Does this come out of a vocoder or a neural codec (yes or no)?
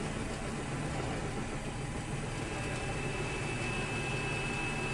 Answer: no